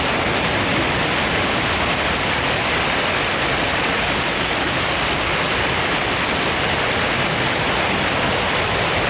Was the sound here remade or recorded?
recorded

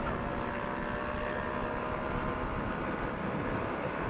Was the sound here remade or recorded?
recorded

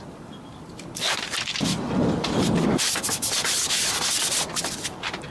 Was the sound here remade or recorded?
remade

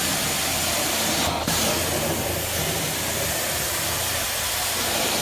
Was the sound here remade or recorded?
recorded